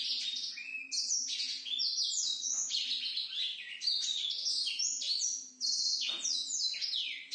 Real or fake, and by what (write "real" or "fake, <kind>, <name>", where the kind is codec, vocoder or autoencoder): real